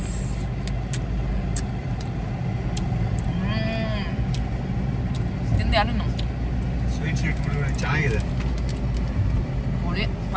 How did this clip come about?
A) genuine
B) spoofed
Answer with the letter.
A